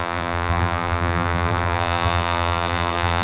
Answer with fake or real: fake